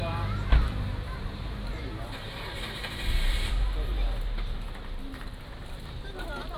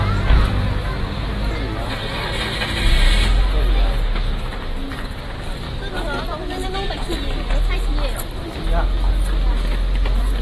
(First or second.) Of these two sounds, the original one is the second